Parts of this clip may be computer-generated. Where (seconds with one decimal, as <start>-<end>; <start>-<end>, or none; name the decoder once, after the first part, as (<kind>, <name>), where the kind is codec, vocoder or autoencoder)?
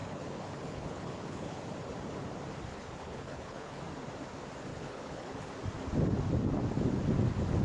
0.0-1.6 (codec, HILCodec); 2.7-3.8; 4.7-5.5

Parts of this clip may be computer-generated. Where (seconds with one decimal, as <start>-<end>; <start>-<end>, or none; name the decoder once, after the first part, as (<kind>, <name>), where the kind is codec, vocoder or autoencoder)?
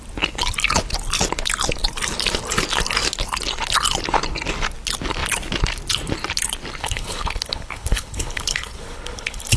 6.8-9.6 (codec, HILCodec)